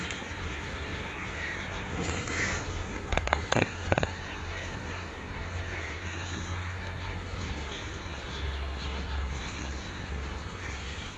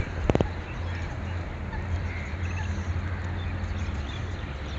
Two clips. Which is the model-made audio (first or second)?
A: first